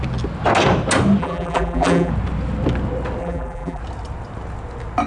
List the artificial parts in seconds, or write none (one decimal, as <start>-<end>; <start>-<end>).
1.2-2.1; 3.2-3.8